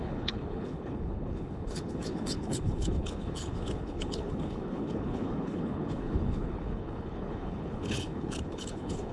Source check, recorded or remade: remade